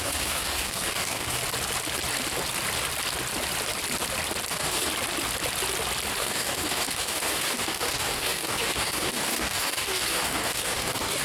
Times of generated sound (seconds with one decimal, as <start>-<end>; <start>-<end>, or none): 0.0-1.4; 4.5-4.9; 6.2-11.2